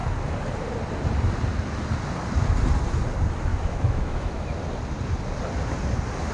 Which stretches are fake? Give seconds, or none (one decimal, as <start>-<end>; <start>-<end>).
3.5-4.6